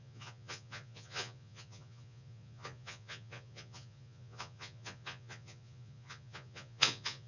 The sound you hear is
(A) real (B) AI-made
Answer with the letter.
B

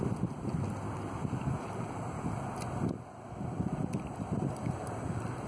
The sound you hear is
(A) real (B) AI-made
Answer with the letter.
A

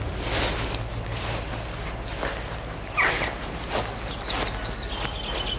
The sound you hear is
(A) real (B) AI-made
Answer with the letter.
A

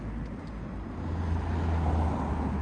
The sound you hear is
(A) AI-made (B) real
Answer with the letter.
B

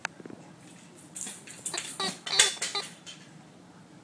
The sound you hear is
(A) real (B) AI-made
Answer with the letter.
A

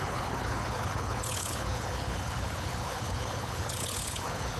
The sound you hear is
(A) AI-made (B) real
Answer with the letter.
A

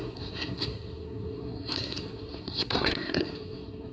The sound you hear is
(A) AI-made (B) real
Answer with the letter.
A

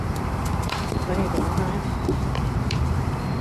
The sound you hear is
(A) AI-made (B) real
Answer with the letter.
A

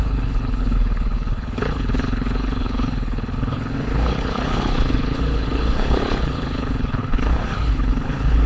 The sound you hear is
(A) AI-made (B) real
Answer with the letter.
A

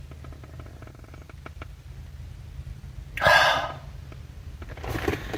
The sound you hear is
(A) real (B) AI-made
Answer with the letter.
A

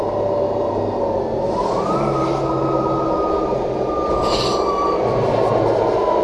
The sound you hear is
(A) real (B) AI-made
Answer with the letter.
A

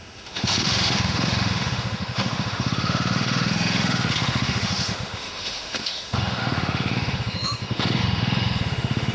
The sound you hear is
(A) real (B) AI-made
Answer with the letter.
B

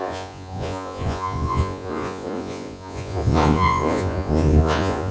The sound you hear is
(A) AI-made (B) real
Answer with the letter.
A